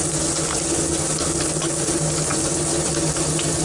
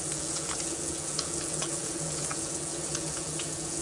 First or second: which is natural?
first